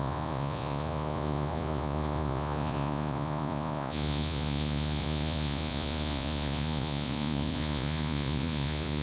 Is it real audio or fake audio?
fake